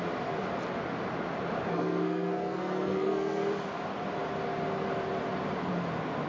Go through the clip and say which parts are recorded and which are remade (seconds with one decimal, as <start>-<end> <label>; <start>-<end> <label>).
0.0-1.7 recorded; 1.7-3.5 remade; 3.5-6.3 recorded

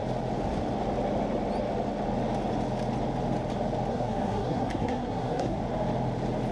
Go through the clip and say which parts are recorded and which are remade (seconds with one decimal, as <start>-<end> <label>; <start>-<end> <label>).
0.0-3.9 recorded; 3.9-5.6 remade; 5.6-6.5 recorded

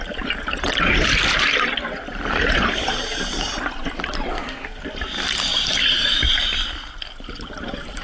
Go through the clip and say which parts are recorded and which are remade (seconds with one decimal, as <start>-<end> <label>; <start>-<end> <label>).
0.0-4.3 recorded; 4.3-4.8 remade; 4.8-8.0 recorded

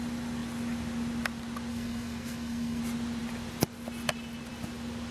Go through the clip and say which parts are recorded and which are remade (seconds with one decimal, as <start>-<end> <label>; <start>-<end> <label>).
0.0-1.7 recorded; 1.7-2.8 remade; 2.8-5.1 recorded

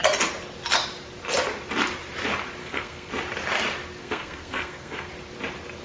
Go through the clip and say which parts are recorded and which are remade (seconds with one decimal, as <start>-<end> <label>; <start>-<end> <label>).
0.0-2.6 recorded; 2.6-3.1 remade; 3.1-4.0 recorded; 4.0-5.1 remade; 5.1-5.8 recorded

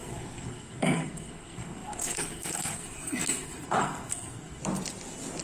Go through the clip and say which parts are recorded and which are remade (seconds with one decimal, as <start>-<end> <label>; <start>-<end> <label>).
0.0-4.6 remade; 4.6-5.4 recorded

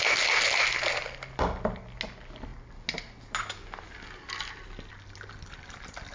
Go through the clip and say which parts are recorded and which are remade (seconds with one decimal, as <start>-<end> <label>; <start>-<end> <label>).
0.0-6.1 recorded

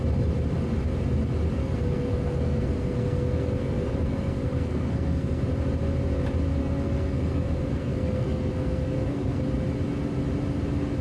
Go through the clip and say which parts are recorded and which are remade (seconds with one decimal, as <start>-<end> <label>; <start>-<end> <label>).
0.0-1.6 recorded; 1.6-5.4 remade; 5.4-6.6 recorded; 6.6-9.4 remade; 9.4-11.0 recorded